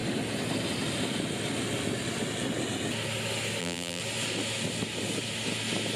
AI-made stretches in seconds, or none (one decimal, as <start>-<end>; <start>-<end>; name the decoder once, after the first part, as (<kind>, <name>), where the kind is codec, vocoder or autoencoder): 3.6-4.0 (vocoder, BigVGAN v2)